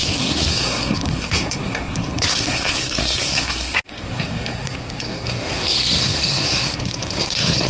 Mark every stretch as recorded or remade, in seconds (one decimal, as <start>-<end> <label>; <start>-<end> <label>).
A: 0.0-7.7 remade